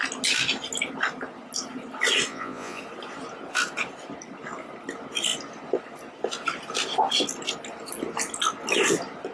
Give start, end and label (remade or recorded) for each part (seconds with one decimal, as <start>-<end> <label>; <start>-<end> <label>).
0.0-2.3 recorded; 2.3-2.8 remade; 2.8-9.3 recorded